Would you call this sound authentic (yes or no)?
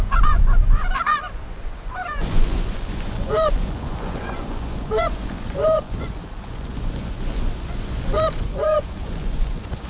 no